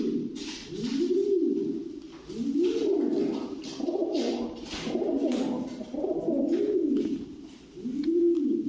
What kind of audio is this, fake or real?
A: real